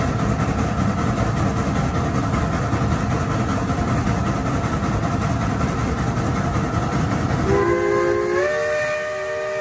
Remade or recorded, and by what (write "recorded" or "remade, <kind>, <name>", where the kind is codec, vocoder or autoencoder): recorded